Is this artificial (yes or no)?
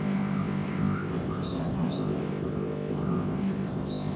yes